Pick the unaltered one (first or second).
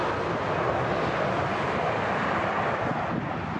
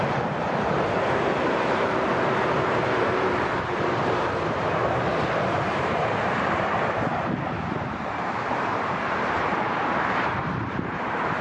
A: first